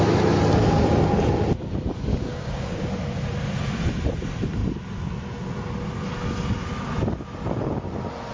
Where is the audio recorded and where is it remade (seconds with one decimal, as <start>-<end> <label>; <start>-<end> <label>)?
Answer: 0.0-2.1 recorded; 2.1-2.9 remade; 2.9-8.3 recorded

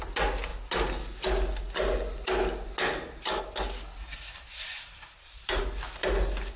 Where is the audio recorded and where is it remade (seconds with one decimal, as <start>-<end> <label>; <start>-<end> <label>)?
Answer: 0.0-4.1 recorded; 4.1-5.6 remade; 5.6-6.6 recorded

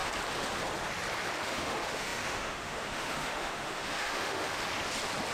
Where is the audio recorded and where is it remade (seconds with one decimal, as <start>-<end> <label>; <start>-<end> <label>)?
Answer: 0.0-1.4 recorded; 1.4-4.6 remade; 4.6-5.3 recorded